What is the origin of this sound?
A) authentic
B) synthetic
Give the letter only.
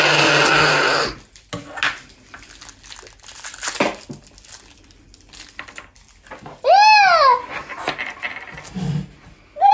A